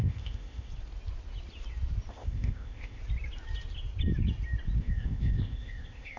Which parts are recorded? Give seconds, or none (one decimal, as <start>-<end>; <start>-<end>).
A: 0.7-2.1; 3.0-4.8